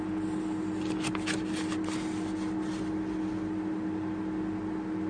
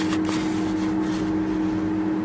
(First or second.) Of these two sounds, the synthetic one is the first